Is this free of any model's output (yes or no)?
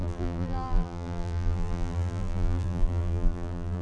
no